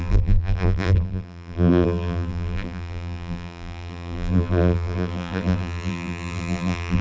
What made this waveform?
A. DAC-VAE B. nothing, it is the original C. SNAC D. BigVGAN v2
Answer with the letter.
D